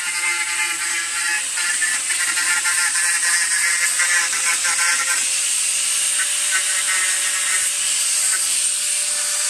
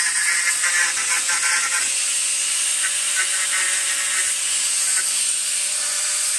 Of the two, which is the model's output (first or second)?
second